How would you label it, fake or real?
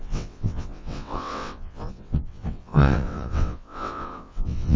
fake